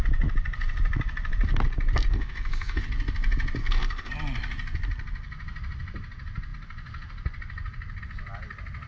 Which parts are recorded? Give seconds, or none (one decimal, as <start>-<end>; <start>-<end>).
0.0-2.1; 2.8-3.6; 4.1-8.9